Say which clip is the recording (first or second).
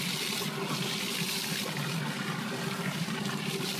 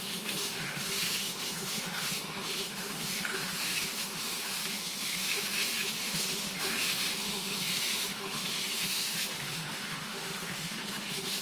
first